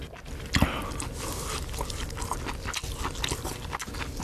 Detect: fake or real real